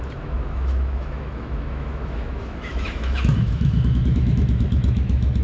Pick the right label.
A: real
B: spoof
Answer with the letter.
B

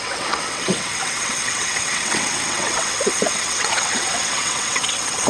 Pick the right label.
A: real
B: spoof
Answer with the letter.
B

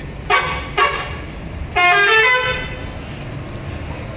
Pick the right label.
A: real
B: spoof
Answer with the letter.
A